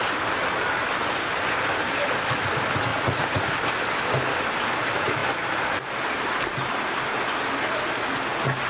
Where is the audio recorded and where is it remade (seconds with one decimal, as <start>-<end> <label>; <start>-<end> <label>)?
0.0-2.9 recorded; 2.9-3.4 remade; 3.4-8.7 recorded